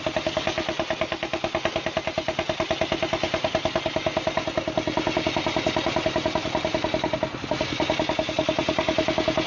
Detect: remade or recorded recorded